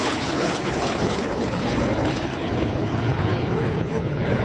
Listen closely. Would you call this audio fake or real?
fake